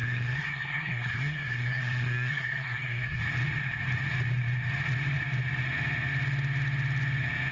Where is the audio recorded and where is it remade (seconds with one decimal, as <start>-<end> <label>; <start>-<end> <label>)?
0.0-3.2 remade; 3.2-7.5 recorded